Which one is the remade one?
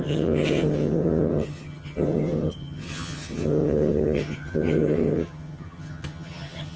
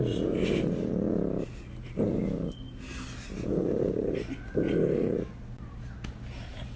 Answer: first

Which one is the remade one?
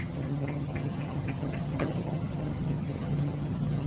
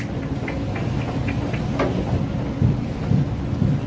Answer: first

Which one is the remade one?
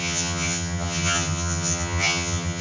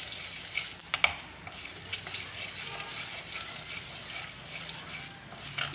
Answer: first